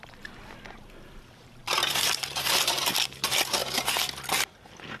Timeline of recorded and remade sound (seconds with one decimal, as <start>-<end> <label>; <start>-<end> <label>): 0.0-3.6 remade; 3.6-5.0 recorded

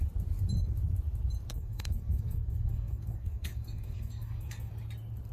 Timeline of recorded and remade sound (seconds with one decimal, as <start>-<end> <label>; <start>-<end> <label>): 0.0-1.5 recorded; 1.5-4.7 remade; 4.7-5.3 recorded

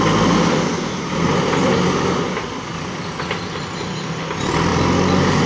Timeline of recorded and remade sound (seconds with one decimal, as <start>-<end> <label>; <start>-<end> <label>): 0.0-5.5 recorded